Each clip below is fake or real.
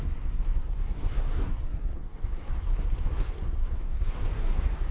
fake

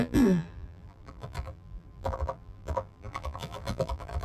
fake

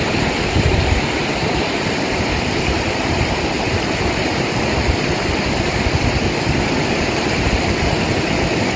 real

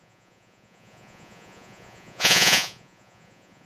fake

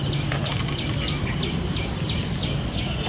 real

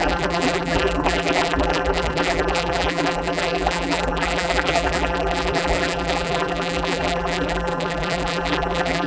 fake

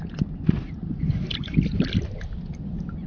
real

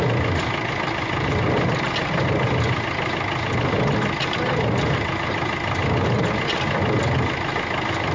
real